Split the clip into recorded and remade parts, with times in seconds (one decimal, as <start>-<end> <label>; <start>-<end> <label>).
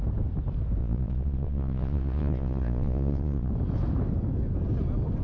0.0-0.8 recorded; 0.8-3.5 remade; 3.5-5.2 recorded